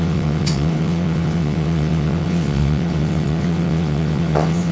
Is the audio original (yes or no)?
no